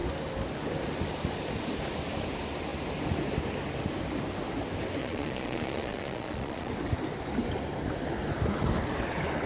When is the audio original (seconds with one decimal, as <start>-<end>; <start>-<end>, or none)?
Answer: 0.0-5.0; 6.7-9.5

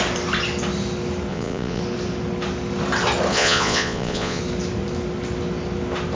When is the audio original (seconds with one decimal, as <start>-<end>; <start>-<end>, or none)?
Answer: 0.0-1.3; 1.8-3.3; 4.4-6.1

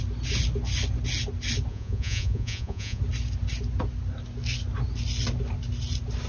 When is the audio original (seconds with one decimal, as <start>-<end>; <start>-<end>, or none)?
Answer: 0.0-1.7; 3.0-6.3